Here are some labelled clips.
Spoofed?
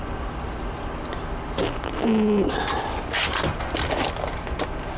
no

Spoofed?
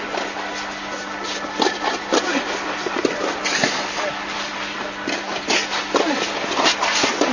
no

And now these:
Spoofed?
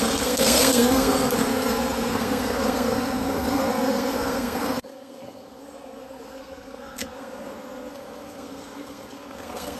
yes